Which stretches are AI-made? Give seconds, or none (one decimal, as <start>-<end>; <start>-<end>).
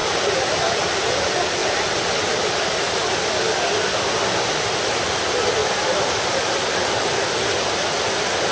0.0-1.1; 5.6-7.2